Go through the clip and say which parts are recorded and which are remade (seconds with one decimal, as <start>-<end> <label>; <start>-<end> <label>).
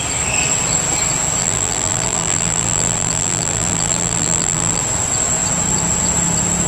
0.0-1.4 recorded; 1.4-4.8 remade; 4.8-6.7 recorded